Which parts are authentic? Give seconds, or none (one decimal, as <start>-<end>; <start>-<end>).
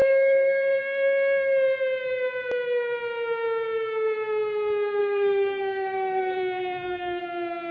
0.8-5.0; 7.2-7.7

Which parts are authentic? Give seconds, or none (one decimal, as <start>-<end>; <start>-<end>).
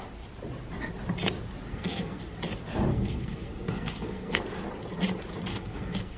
0.0-1.7; 2.2-2.9; 4.4-5.5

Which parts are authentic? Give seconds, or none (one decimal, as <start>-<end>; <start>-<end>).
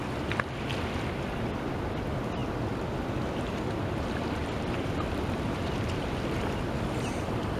0.0-7.6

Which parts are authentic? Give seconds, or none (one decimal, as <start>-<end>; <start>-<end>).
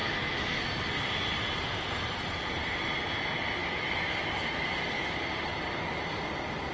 0.6-3.6; 5.1-6.7